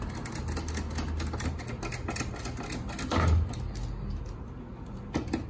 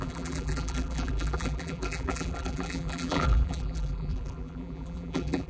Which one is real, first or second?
first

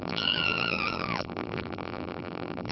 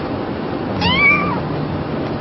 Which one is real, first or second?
second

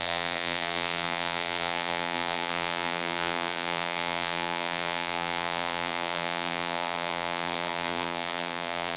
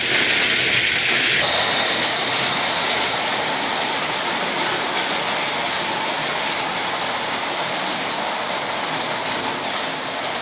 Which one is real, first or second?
second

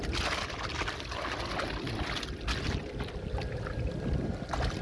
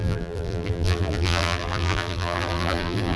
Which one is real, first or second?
first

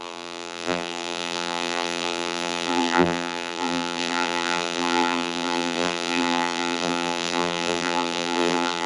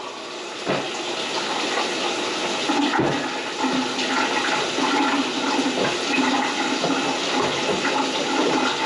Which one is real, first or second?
second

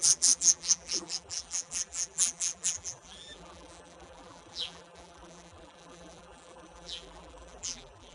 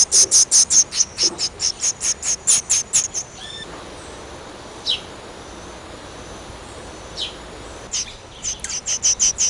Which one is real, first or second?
second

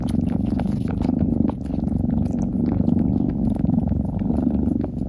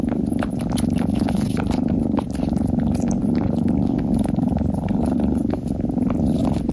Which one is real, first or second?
first